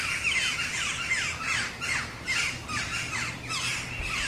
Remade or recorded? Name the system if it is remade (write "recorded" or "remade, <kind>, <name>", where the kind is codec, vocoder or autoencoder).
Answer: recorded